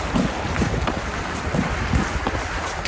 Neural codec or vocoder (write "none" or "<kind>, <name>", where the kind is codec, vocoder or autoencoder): none